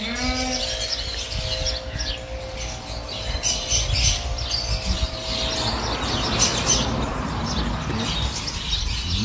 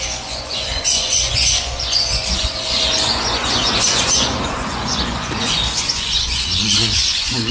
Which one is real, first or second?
first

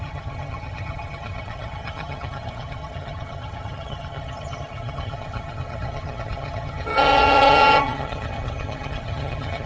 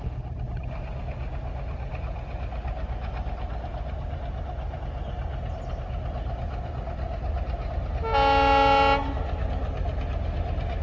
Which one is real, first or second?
second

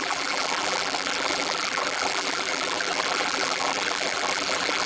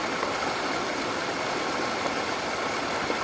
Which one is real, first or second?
second